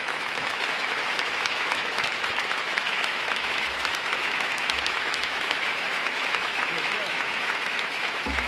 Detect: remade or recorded remade